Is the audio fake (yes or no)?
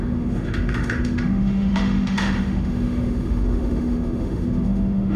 yes